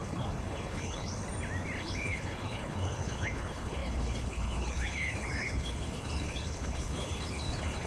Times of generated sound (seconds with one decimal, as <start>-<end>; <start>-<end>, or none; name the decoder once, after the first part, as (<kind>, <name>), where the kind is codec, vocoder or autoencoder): 0.0-1.1 (codec, HILCodec); 1.8-7.9